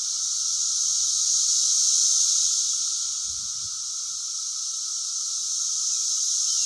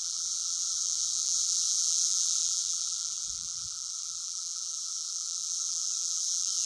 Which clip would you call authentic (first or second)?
first